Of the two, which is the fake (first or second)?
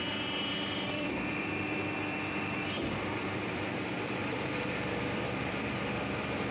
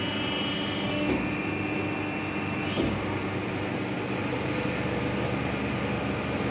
first